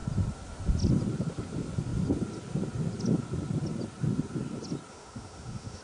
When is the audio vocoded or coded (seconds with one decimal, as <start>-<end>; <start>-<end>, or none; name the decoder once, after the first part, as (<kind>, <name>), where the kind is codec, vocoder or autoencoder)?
4.9-5.8 (autoencoder, DAC-VAE)